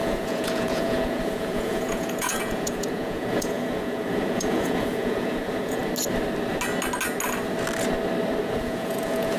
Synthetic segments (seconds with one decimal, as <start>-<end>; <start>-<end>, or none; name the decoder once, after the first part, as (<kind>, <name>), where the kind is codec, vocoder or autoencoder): 0.0-5.8 (vocoder, Vocos); 8.4-9.4